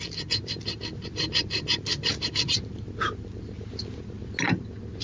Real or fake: real